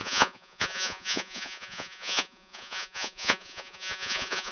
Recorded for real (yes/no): no